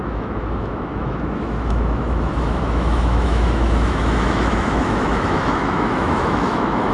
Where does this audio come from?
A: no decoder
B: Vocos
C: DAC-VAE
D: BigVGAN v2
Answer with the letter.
C